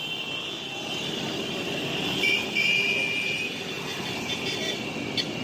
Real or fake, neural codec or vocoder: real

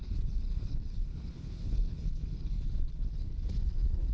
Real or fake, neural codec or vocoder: fake, codec, HILCodec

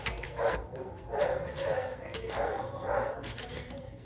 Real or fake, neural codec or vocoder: fake, codec, SNAC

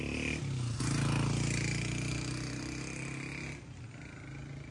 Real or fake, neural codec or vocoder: real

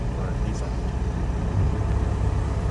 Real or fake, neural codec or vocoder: real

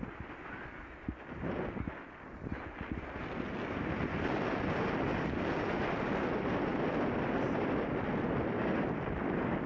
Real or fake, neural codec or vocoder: real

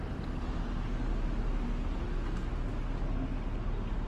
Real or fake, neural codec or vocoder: real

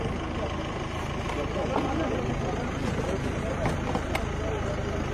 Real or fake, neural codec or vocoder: real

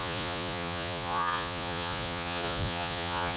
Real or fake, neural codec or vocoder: fake, vocoder, Vocos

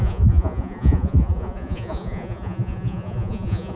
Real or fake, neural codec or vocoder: fake, vocoder, Vocos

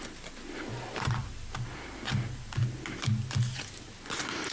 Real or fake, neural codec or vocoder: real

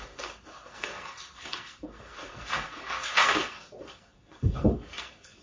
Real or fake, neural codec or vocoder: fake, codec, SNAC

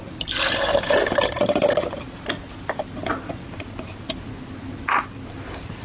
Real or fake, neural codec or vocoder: real